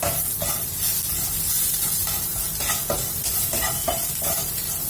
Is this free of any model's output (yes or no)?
yes